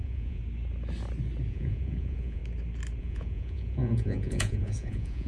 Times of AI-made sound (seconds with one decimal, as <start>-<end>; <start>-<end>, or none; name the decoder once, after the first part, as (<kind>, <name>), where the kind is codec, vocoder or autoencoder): 0.0-0.4 (vocoder, Vocos); 1.5-2.4; 3.0-5.3